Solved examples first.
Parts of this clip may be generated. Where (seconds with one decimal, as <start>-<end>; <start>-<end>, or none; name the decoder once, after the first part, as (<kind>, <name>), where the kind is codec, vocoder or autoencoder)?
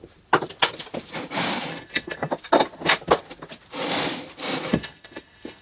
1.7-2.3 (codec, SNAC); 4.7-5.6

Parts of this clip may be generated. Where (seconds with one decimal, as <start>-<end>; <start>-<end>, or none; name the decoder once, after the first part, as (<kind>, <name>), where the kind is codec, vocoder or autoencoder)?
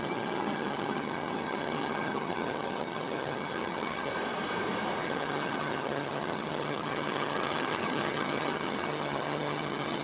0.0-4.1 (vocoder, HiFi-GAN); 5.0-10.0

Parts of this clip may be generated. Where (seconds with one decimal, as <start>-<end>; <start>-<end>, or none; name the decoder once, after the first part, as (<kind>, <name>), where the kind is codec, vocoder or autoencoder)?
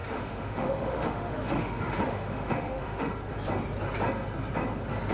0.0-3.1 (autoencoder, DAC-VAE)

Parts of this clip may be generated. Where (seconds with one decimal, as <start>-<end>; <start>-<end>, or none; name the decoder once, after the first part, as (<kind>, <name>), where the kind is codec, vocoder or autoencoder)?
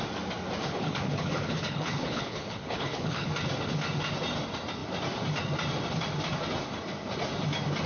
0.6-3.3 (codec, HILCodec)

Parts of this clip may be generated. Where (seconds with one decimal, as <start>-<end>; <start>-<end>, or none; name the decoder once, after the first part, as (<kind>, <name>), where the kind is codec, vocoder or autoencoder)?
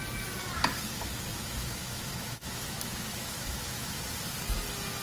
1.3-4.0 (autoencoder, DAC-VAE)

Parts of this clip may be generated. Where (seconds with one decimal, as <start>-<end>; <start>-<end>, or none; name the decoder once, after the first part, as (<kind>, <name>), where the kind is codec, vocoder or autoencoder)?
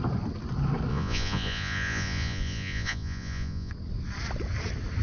0.9-3.7 (vocoder, Vocos)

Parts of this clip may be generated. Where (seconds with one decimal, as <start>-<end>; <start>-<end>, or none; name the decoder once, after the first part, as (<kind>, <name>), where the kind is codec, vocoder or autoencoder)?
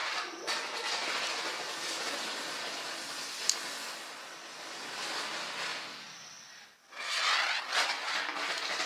none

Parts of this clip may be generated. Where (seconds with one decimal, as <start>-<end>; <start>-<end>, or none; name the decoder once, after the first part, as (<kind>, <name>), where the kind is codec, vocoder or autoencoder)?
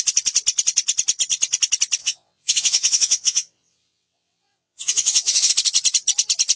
2.0-5.5 (vocoder, WaveNeXt)